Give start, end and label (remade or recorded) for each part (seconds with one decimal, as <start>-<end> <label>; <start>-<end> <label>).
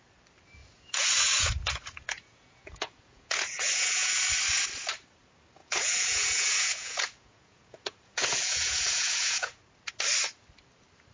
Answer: 0.0-0.6 recorded; 0.6-4.1 remade; 4.1-5.6 recorded; 5.6-9.6 remade; 9.6-11.1 recorded